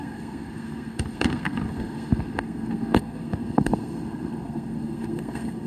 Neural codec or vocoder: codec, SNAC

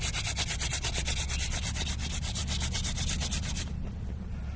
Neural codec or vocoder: none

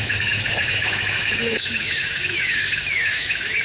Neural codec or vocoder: autoencoder, DAC-VAE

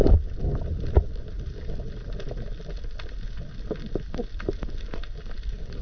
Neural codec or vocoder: none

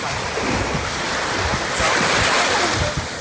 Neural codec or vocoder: none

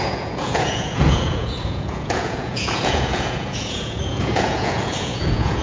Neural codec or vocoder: vocoder, Vocos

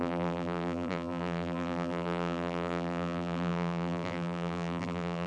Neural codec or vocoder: vocoder, BigVGAN v2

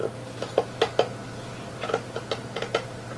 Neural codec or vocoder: none